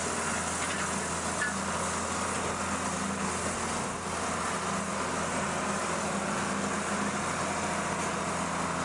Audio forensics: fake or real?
real